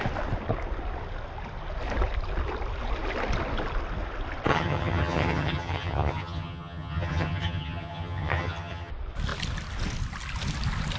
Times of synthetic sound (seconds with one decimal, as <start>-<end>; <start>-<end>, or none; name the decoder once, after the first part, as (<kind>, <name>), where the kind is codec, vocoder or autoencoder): 4.5-8.9 (vocoder, HiFi-GAN)